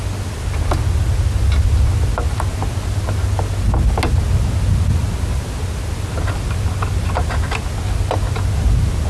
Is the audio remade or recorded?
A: recorded